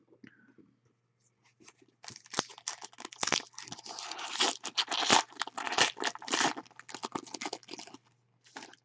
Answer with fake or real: real